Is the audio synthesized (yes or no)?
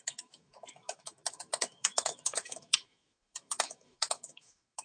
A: yes